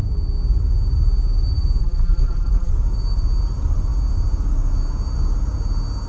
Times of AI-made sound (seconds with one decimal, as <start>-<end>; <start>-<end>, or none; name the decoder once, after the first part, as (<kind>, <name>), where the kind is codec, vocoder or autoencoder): 1.8-2.7 (vocoder, BigVGAN v2)